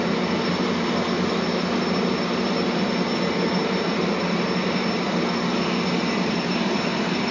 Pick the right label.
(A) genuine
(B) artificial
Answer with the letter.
A